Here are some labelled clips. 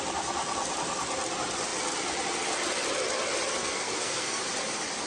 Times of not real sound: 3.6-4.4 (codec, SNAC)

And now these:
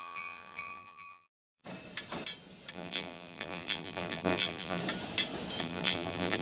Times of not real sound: 0.0-1.6 (vocoder, BigVGAN v2); 2.7-4.8; 5.6-6.4

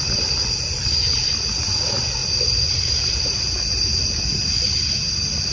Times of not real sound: none

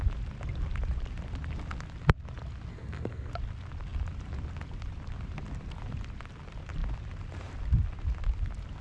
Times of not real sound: 2.7-3.3 (codec, SNAC)

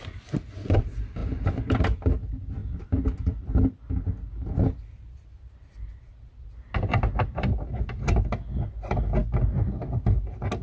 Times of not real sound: none

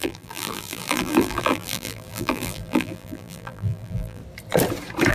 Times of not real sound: 0.0-4.2 (vocoder, BigVGAN v2)